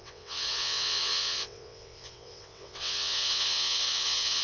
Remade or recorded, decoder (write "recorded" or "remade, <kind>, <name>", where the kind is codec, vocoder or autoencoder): remade, vocoder, WaveNeXt